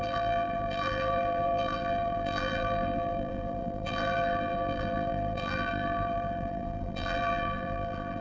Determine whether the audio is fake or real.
fake